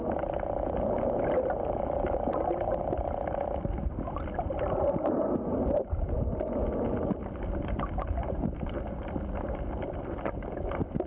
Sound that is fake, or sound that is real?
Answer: real